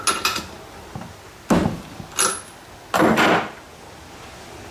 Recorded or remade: recorded